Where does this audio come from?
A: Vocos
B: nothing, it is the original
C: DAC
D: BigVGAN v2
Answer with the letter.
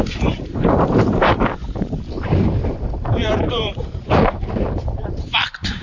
D